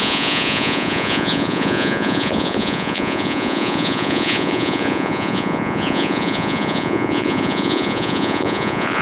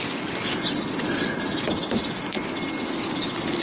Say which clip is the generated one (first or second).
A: first